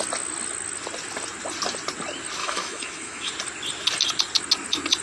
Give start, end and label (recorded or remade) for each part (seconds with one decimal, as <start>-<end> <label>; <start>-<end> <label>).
0.0-2.4 recorded; 2.4-3.3 remade; 3.3-5.0 recorded